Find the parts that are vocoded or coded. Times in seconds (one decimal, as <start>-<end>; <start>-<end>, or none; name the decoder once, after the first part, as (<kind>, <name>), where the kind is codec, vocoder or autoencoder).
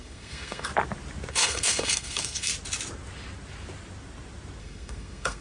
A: 0.0-0.7 (codec, SNAC); 1.3-2.5; 4.6-5.4